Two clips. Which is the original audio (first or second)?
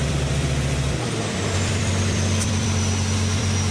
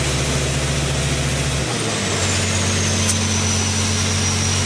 second